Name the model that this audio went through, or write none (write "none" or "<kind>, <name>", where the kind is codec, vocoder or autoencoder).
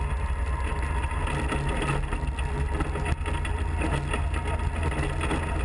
none